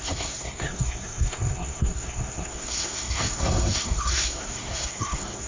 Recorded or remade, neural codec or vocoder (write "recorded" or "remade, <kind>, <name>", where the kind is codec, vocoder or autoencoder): remade, codec, SNAC